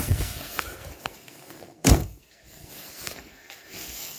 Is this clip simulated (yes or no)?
yes